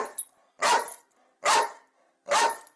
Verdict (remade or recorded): recorded